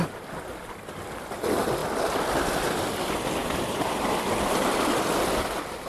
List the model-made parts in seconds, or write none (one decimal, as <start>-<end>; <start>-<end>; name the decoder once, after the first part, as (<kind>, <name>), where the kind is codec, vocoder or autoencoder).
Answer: none